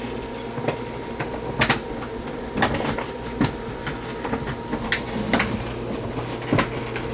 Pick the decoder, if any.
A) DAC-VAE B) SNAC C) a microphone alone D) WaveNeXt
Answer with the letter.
C